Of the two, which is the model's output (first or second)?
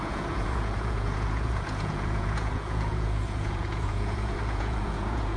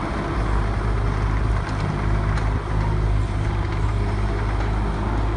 first